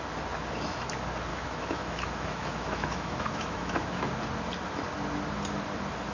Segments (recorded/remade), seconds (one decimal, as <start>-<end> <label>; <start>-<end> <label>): 0.0-1.3 recorded; 1.3-4.1 remade; 4.1-6.1 recorded